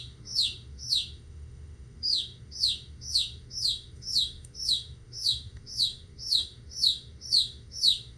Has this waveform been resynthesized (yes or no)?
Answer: yes